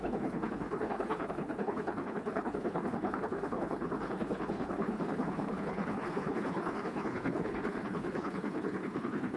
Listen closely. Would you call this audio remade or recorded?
remade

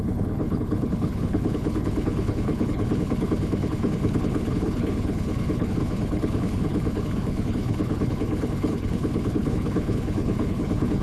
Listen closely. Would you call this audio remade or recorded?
remade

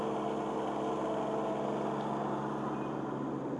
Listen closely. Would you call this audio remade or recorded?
recorded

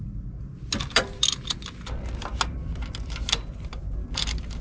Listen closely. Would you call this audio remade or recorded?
recorded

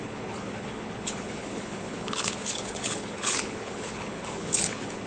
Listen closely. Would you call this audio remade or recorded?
remade